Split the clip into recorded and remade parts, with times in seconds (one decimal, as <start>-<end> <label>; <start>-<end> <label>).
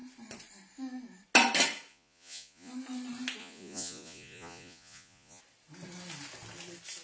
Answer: 0.0-1.9 recorded; 1.9-2.7 remade; 2.7-3.4 recorded; 3.4-5.4 remade; 5.4-7.0 recorded